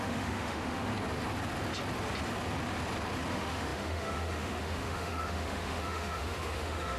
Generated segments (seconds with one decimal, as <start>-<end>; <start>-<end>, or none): 0.0-0.9; 3.3-7.0